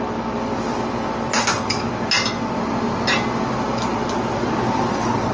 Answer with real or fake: real